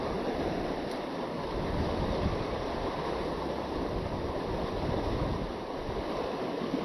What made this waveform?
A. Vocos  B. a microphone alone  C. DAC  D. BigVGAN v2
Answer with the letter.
B